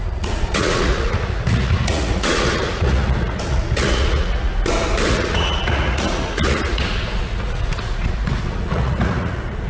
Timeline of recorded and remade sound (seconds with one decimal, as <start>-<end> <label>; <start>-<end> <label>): 0.0-4.5 remade; 4.5-5.1 recorded; 5.1-9.7 remade